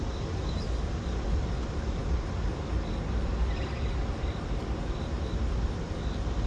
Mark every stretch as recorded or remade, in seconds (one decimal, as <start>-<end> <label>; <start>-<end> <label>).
0.0-6.5 recorded